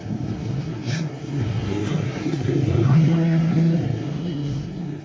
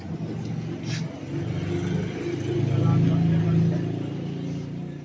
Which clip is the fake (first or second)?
first